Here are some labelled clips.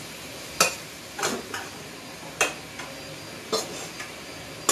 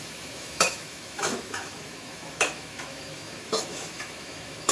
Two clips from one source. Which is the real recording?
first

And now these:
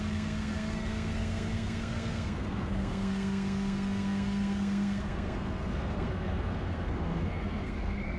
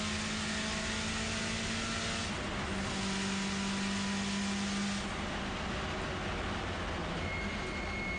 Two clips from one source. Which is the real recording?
second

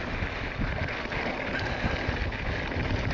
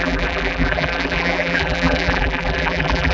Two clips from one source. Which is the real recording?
first